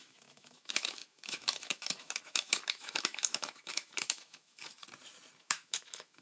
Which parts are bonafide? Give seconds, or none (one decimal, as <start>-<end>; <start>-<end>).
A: 4.7-5.4